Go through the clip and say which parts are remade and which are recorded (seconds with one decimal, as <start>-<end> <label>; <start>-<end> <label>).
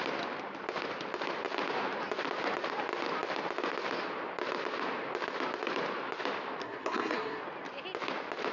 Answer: 0.0-6.6 recorded; 6.6-7.4 remade; 7.4-8.5 recorded